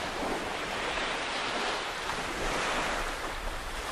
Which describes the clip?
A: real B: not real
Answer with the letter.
B